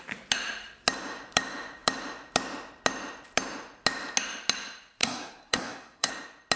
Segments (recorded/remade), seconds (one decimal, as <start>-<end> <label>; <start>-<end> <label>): 0.0-5.0 recorded; 5.0-6.1 remade; 6.1-6.6 recorded